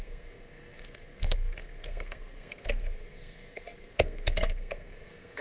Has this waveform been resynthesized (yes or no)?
yes